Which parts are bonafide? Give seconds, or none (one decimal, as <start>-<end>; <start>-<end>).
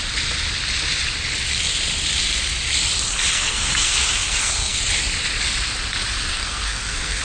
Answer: 0.0-3.3; 4.8-6.3